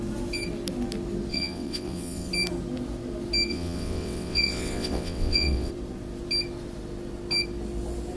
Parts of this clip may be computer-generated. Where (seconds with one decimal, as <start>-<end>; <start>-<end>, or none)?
1.3-2.3; 3.5-5.7